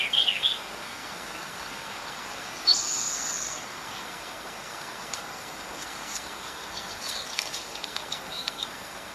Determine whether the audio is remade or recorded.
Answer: remade